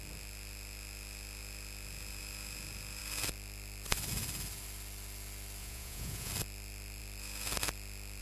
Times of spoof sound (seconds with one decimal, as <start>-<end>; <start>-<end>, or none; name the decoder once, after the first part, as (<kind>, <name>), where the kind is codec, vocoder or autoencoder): 5.6-6.3 (vocoder, Vocos)